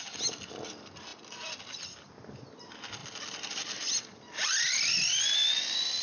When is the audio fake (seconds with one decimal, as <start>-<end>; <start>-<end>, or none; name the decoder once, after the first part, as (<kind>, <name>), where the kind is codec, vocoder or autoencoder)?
none